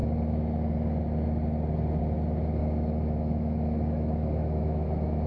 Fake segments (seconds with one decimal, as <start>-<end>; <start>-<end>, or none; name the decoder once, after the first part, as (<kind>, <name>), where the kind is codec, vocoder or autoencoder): 2.6-5.3 (autoencoder, DAC-VAE)